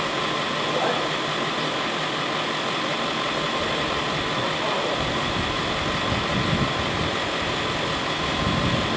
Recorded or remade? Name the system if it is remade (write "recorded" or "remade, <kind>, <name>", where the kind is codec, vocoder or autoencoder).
recorded